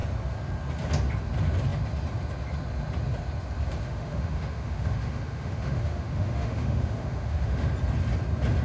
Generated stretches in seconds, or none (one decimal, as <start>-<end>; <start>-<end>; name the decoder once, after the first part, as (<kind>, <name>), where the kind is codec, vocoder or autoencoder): 3.9-7.7 (autoencoder, DAC-VAE)